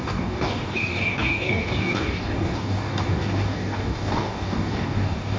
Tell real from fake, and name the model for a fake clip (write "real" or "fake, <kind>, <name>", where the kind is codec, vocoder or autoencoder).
fake, codec, DAC